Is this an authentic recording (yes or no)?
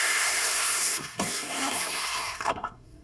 no